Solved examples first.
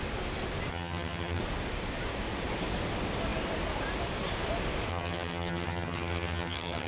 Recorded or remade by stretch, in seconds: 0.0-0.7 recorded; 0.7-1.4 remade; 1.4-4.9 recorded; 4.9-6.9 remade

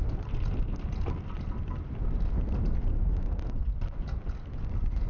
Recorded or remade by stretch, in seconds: 0.0-2.8 recorded; 2.8-3.6 remade; 3.6-5.1 recorded

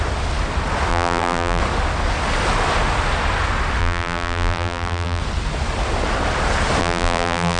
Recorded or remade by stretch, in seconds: 0.0-0.9 recorded; 0.9-1.6 remade; 1.6-3.8 recorded; 3.8-5.2 remade; 5.2-6.8 recorded; 6.8-7.6 remade

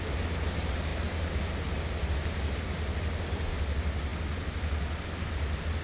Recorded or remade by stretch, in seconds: 0.0-5.8 recorded